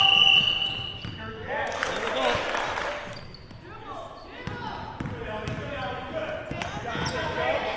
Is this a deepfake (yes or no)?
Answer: no